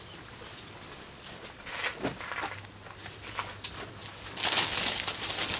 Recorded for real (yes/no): yes